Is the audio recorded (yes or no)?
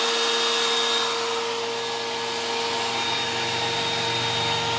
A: yes